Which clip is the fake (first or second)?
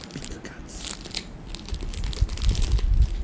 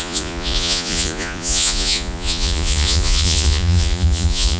second